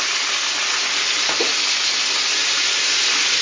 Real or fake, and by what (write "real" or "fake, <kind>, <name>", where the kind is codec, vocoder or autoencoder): real